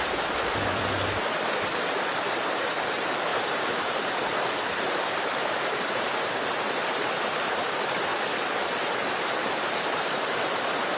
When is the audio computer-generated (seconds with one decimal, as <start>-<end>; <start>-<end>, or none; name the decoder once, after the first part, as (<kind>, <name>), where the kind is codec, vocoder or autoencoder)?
0.0-8.1 (vocoder, BigVGAN v2); 9.1-11.0